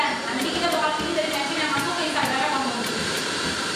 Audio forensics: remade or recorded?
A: remade